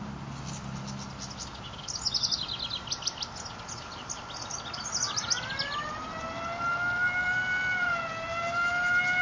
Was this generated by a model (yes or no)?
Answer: no